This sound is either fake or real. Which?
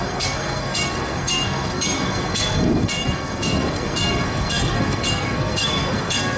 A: fake